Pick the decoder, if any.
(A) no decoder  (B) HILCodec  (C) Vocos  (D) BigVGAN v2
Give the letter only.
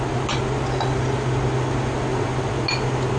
A